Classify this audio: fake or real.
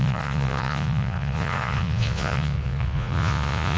fake